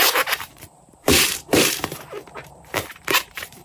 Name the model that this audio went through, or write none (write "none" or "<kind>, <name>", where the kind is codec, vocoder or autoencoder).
vocoder, BigVGAN v2